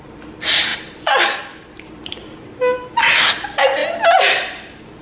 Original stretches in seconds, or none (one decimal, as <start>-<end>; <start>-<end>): 0.0-0.7; 3.3-3.8